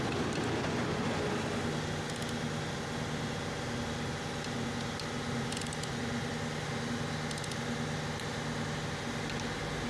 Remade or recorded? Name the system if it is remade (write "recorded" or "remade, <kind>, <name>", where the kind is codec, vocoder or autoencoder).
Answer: recorded